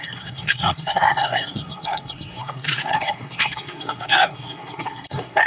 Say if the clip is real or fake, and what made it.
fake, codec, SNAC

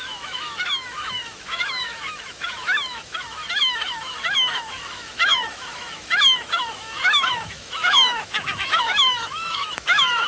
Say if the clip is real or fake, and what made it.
fake, autoencoder, DAC-VAE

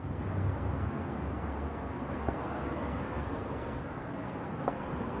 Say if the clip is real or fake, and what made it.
fake, codec, SNAC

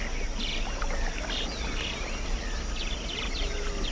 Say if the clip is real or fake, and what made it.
real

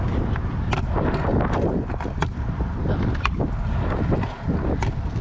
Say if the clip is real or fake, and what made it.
real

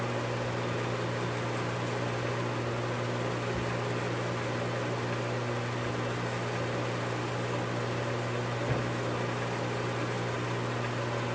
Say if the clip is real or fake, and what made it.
real